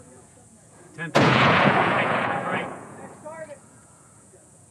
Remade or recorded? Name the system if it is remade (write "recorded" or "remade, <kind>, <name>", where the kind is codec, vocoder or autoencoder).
remade, vocoder, Vocos